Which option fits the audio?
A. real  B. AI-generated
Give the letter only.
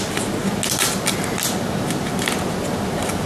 A